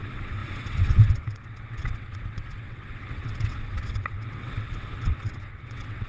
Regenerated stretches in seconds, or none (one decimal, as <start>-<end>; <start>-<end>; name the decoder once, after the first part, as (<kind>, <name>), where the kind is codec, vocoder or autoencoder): 0.0-6.1 (vocoder, WaveNeXt)